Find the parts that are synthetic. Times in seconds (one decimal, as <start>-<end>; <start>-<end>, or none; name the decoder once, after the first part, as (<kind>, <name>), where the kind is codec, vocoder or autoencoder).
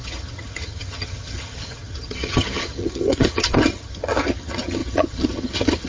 0.0-5.9 (vocoder, HiFi-GAN)